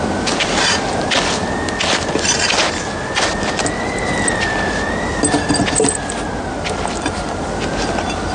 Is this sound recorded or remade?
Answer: recorded